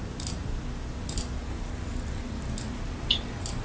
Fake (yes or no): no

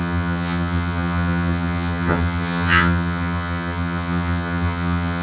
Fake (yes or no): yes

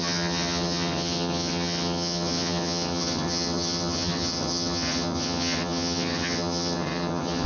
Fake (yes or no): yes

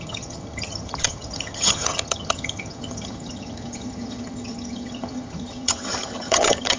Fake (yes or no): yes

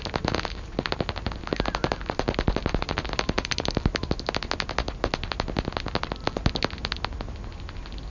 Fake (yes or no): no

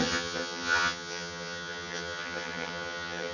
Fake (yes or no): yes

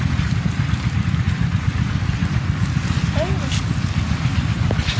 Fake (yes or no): no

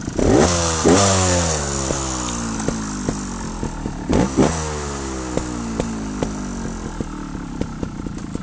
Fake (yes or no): no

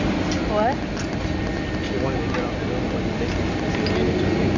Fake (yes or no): no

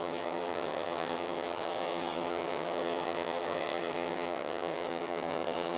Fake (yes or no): yes